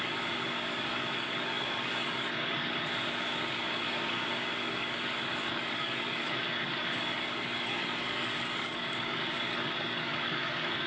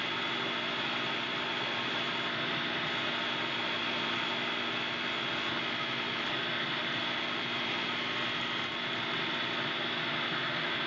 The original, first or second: second